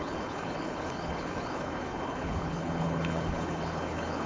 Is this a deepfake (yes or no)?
yes